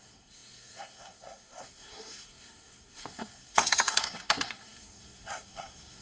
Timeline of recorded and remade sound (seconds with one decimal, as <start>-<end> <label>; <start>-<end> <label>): 0.0-6.0 remade

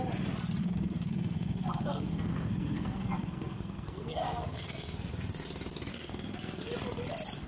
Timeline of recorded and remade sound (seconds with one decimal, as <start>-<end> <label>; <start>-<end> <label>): 0.0-0.6 recorded; 0.6-5.1 remade; 5.1-5.9 recorded; 5.9-6.6 remade; 6.6-7.5 recorded

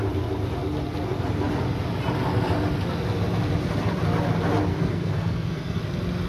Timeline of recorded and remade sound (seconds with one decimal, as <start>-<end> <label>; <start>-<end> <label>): 0.0-4.7 recorded; 4.7-5.8 remade; 5.8-6.3 recorded

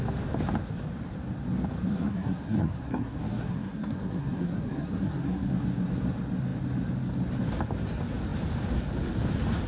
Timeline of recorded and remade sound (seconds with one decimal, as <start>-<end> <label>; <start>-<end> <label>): 0.0-1.9 recorded; 1.9-5.5 remade; 5.5-9.7 recorded

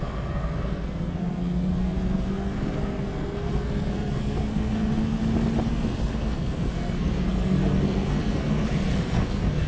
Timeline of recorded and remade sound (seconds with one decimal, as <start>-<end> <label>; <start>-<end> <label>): 0.0-5.2 remade; 5.2-5.7 recorded; 5.7-9.7 remade

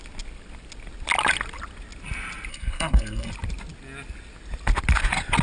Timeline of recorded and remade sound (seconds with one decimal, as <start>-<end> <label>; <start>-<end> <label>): 0.0-2.5 recorded; 2.5-3.3 remade; 3.3-5.4 recorded

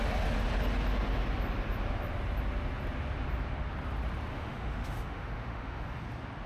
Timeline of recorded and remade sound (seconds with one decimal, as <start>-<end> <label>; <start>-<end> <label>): 0.0-4.3 recorded; 4.3-5.8 remade; 5.8-6.5 recorded